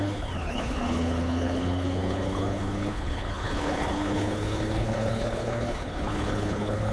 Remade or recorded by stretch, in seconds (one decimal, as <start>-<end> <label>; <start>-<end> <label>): 0.0-6.9 remade